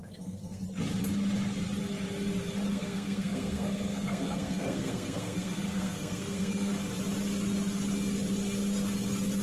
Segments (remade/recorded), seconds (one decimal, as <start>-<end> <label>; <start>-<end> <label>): 0.0-0.6 remade; 0.6-2.7 recorded; 2.7-6.7 remade; 6.7-9.4 recorded